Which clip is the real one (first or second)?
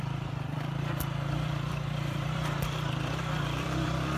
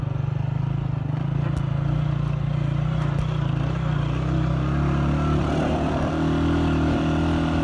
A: second